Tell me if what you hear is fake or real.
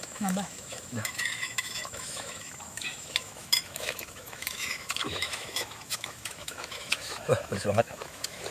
fake